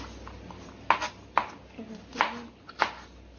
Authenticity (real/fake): real